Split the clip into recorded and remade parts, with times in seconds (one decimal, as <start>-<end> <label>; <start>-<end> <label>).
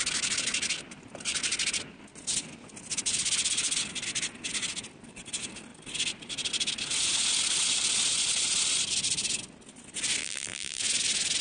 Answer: 0.0-10.2 recorded; 10.2-10.8 remade; 10.8-11.4 recorded